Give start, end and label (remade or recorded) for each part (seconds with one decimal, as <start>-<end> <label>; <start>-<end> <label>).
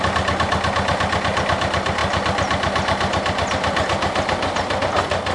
0.0-5.3 recorded